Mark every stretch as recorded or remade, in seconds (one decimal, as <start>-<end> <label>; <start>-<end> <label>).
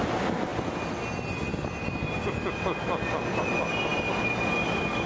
0.0-5.1 recorded